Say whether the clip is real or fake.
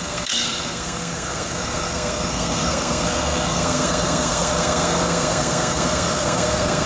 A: fake